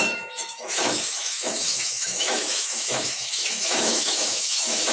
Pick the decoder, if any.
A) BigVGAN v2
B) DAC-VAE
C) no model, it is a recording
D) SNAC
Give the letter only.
B